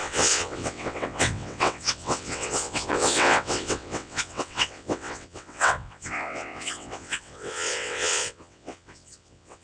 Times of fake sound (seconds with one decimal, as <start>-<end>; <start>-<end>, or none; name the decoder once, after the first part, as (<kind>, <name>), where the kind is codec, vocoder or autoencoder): 0.0-9.6 (vocoder, WaveNeXt)